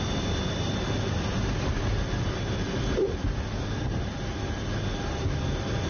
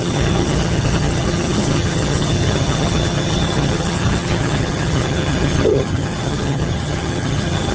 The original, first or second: first